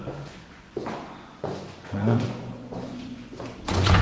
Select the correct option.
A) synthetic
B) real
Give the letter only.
A